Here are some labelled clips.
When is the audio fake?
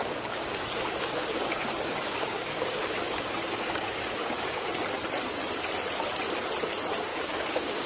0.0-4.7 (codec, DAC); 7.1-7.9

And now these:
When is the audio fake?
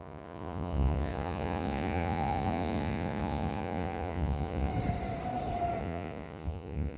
0.0-4.7 (vocoder, Vocos); 5.8-7.0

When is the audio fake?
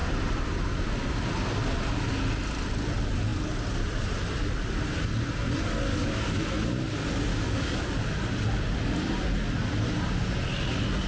5.9-6.4 (codec, DAC); 7.3-7.9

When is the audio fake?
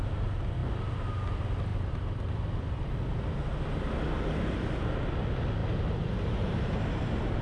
1.7-2.3 (vocoder, BigVGAN v2); 5.6-7.4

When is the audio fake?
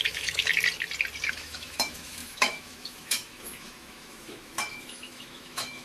0.0-0.5 (autoencoder, DAC-VAE); 1.3-5.8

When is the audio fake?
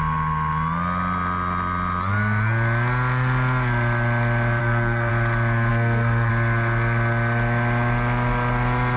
4.6-5.1 (codec, SNAC); 5.7-6.3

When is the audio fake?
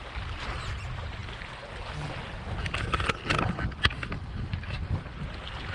none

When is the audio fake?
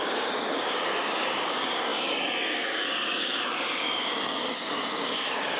0.0-5.6 (codec, DAC)